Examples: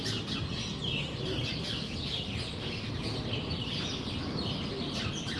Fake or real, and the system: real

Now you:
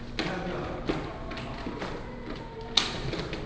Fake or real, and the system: real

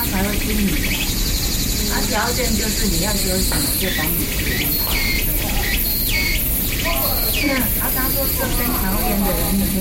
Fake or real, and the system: real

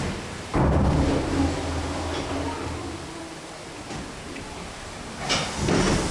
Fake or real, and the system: real